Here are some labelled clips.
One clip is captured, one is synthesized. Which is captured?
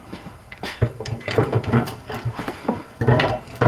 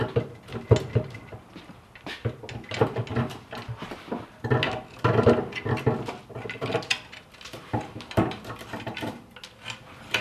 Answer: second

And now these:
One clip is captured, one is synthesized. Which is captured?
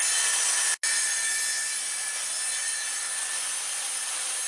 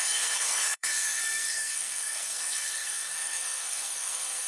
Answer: first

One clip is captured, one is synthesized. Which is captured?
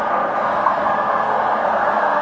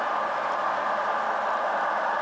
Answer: second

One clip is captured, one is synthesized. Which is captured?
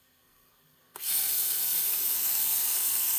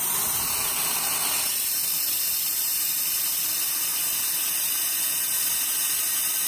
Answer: second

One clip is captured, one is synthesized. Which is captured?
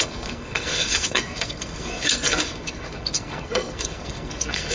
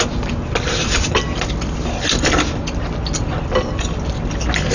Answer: second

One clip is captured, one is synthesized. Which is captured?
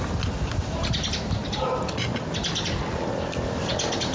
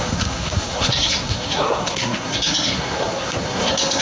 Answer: first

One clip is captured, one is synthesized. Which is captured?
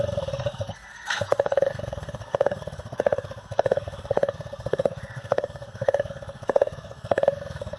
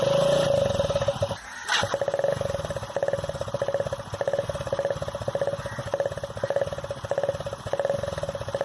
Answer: second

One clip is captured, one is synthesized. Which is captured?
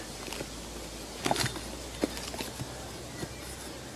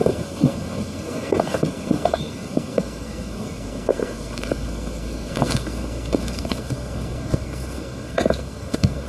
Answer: first